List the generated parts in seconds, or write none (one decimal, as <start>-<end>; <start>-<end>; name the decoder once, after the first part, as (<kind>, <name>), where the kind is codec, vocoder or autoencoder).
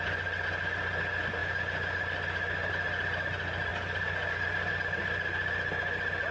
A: none